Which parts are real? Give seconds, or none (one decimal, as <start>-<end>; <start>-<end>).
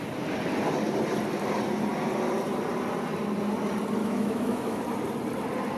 0.0-4.0; 4.8-5.8